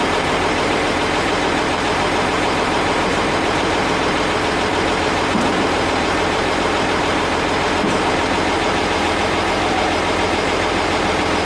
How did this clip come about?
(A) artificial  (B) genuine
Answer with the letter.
A